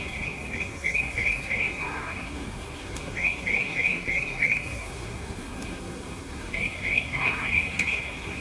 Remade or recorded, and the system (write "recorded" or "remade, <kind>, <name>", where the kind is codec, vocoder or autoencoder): remade, codec, SNAC